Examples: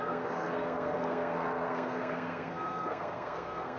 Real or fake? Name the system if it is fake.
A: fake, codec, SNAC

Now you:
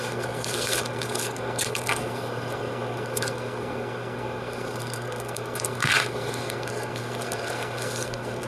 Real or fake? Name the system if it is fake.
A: fake, codec, SNAC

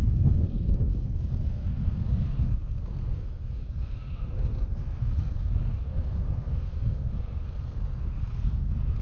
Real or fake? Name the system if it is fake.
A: fake, codec, SNAC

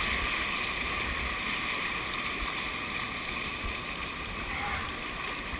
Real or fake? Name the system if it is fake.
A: real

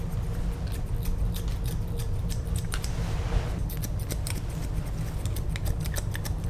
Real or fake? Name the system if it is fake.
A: real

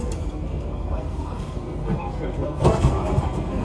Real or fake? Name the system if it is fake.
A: fake, codec, SNAC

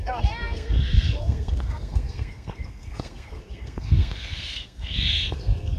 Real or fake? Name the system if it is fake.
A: fake, codec, SNAC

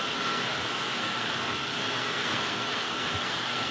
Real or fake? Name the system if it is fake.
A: fake, codec, SNAC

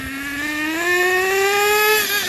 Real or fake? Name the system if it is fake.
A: real